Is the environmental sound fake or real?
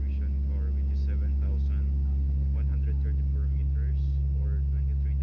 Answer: real